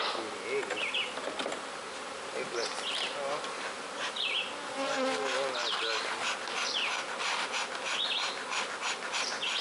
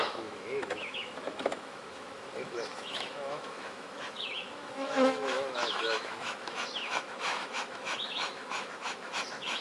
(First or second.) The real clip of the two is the first